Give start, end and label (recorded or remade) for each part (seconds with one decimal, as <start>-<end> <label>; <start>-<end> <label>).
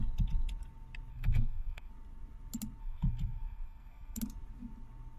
0.0-1.1 recorded; 1.1-1.9 remade; 1.9-2.8 recorded; 2.8-4.2 remade; 4.2-5.2 recorded